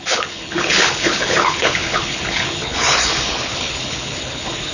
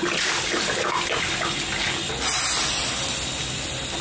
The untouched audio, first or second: second